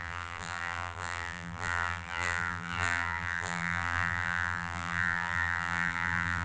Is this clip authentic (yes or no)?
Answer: no